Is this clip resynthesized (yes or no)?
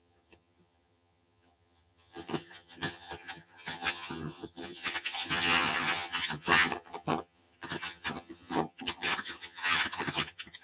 yes